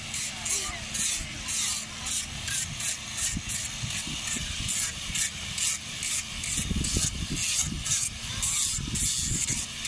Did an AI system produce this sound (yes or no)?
no